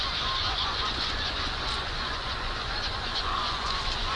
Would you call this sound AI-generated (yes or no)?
yes